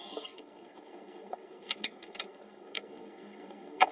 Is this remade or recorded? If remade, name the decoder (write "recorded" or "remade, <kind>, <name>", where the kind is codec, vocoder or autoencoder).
remade, codec, SNAC